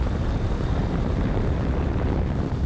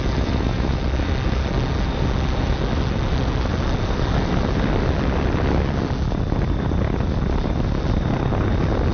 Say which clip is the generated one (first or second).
first